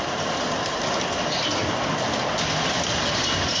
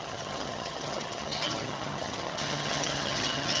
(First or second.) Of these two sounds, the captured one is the first